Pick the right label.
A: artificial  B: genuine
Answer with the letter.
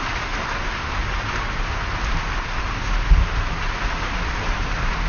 B